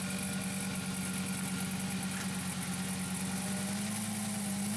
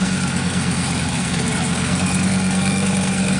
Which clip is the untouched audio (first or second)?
first